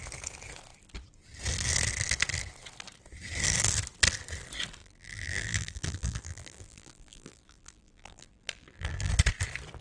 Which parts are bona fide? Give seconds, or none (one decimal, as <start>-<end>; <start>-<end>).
0.0-4.8; 9.1-9.8